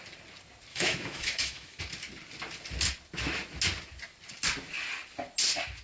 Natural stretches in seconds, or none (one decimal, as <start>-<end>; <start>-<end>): 0.0-0.7; 1.8-5.8